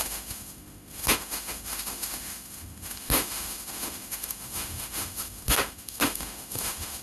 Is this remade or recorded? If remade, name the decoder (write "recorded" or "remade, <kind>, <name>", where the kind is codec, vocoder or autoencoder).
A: remade, autoencoder, DAC-VAE